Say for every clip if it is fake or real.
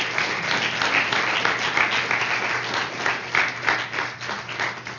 real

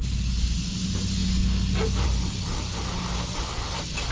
real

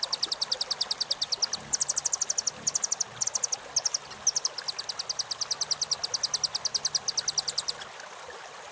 real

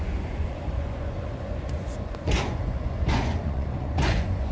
fake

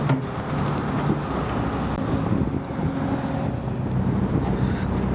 real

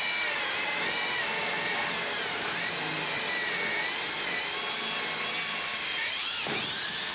real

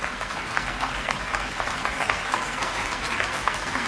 fake